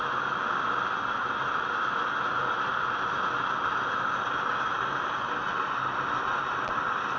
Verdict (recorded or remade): recorded